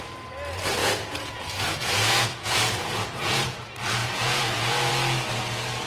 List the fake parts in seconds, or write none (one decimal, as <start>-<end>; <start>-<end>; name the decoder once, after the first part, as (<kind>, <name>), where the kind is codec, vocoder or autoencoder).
0.8-3.6 (vocoder, Vocos); 4.0-4.9